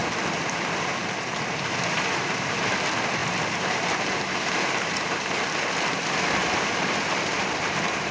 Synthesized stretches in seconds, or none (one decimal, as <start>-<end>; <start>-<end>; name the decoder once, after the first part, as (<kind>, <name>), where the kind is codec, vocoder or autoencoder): 0.0-2.7 (vocoder, BigVGAN v2); 3.2-5.3; 6.4-8.1